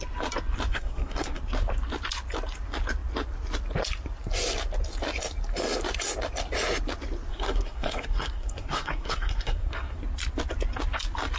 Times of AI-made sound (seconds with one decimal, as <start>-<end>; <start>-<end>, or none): 0.7-1.4; 7.3-10.0